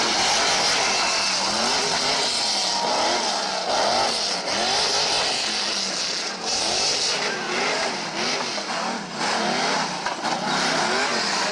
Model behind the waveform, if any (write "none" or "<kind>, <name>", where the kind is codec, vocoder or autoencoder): none